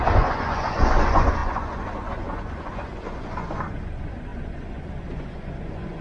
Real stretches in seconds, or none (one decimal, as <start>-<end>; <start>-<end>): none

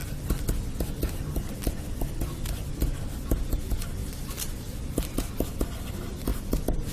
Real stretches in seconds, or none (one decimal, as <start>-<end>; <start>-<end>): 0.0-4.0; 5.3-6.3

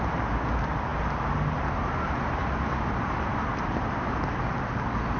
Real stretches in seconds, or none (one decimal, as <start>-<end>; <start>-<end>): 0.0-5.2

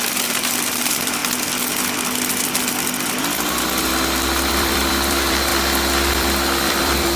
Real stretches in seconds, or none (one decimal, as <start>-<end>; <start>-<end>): 1.2-3.2; 3.9-4.5; 5.5-6.1

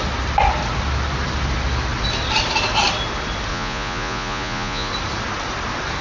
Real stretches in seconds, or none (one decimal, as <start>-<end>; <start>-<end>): 0.0-3.5; 4.9-6.0